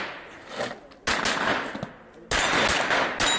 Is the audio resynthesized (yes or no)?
no